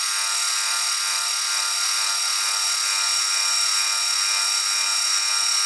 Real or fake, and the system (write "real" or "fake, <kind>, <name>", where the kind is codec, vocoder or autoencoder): real